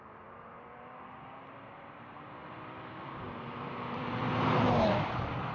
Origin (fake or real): fake